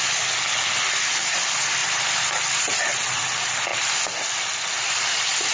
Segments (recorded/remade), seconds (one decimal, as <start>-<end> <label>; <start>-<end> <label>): 0.0-5.5 recorded